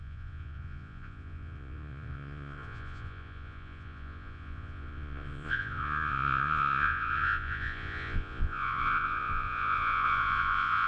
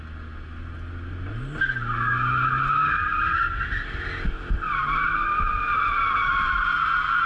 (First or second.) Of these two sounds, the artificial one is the first